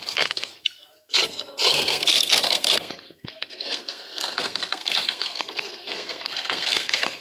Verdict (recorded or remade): remade